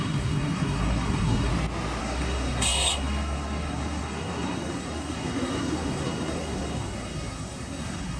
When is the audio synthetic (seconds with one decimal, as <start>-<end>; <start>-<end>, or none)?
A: 0.0-1.5; 2.0-8.2